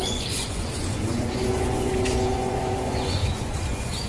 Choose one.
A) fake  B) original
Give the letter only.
A